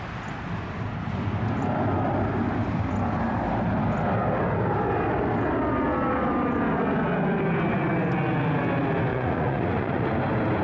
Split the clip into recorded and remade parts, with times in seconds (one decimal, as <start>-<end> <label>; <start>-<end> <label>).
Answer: 0.0-9.1 recorded; 9.1-10.1 remade; 10.1-10.6 recorded